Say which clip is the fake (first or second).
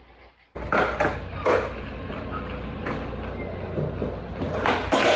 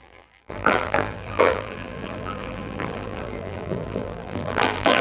second